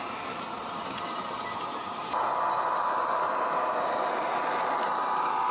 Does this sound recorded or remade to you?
recorded